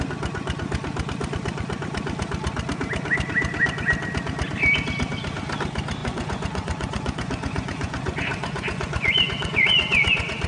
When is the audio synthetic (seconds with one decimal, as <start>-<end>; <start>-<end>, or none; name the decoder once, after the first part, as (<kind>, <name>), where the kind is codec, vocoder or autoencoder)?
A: 6.0-10.5 (vocoder, Vocos)